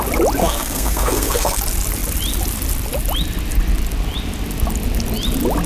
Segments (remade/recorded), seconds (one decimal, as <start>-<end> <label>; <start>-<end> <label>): 0.0-0.4 recorded; 0.4-1.6 remade; 1.6-5.7 recorded